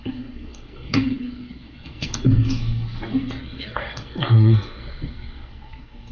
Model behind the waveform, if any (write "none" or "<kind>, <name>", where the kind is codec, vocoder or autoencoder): codec, SNAC